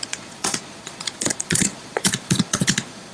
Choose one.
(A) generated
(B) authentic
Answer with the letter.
A